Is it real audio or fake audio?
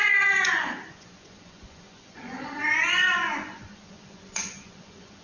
fake